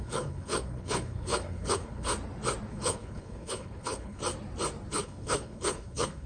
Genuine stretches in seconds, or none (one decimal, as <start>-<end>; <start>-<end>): 2.1-2.7; 4.2-4.9

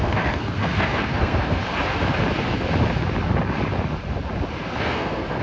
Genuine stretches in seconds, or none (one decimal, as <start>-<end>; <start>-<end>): 1.6-4.8